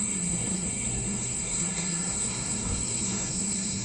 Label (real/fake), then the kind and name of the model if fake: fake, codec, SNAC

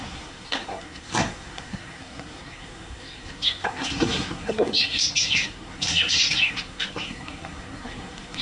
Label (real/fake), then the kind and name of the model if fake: fake, codec, SNAC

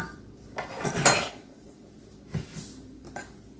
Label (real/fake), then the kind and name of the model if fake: real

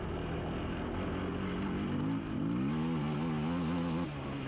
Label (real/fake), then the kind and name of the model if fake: real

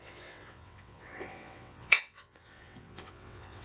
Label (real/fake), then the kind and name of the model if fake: fake, vocoder, WaveNeXt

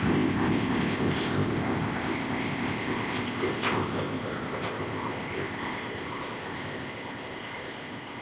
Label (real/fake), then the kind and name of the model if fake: fake, codec, ZipCodec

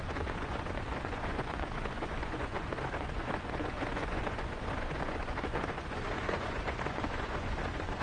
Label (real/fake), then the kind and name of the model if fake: fake, vocoder, Vocos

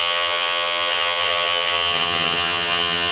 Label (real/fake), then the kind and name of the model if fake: fake, vocoder, HiFi-GAN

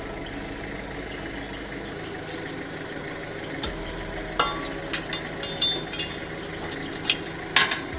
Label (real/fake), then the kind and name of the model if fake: real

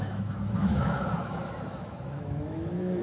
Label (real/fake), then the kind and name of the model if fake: fake, autoencoder, DAC-VAE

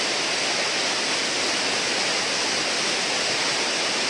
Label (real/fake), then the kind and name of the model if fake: real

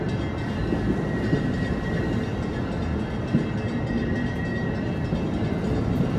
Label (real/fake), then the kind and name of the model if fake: real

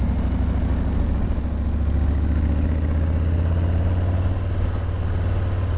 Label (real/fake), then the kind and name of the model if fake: real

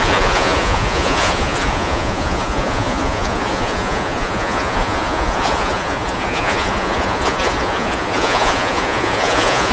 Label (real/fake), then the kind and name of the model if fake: fake, vocoder, Vocos